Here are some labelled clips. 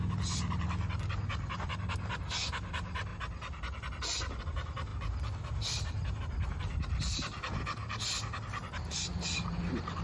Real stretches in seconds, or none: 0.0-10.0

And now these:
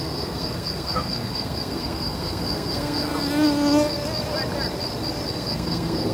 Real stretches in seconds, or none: 3.1-5.3

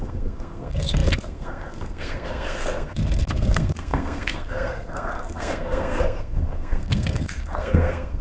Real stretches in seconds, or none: none

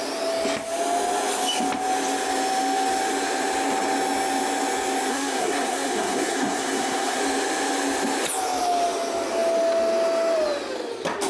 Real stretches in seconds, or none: 0.0-5.1; 7.2-11.3

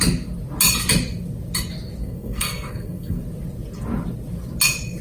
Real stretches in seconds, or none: 0.0-2.0; 3.2-5.0

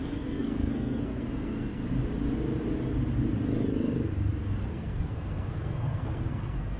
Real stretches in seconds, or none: 1.8-4.7